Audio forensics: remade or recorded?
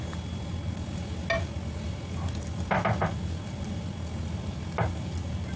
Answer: recorded